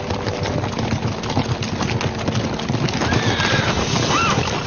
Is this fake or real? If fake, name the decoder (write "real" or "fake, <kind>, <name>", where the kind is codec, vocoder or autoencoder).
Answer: real